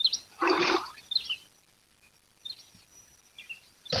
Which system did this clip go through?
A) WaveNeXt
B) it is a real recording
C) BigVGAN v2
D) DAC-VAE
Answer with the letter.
B